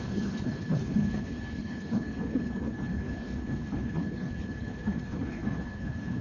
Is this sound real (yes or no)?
no